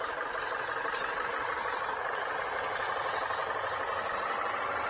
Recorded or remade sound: recorded